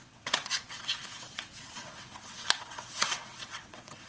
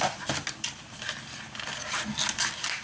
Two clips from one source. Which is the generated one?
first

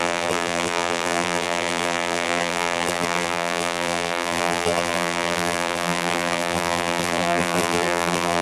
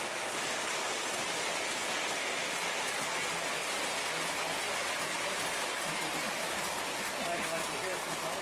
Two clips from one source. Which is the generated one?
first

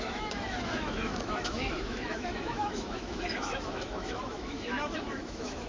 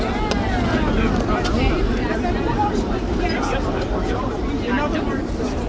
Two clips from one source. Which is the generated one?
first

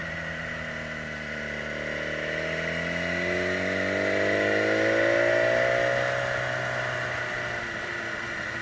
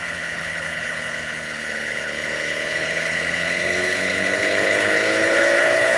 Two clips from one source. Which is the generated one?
second